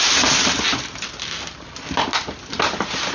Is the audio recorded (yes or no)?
yes